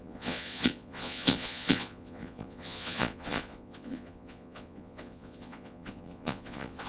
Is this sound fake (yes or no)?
yes